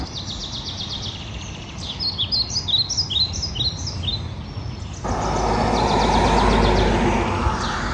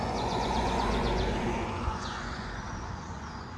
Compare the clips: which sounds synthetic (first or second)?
second